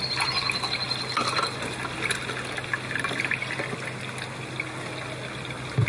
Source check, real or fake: real